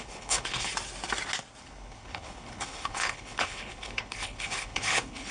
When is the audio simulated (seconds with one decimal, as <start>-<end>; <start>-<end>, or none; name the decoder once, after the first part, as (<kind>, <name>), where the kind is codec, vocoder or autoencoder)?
0.0-0.7 (codec, HILCodec); 1.6-5.3